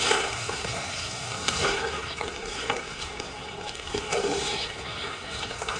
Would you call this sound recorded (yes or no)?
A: no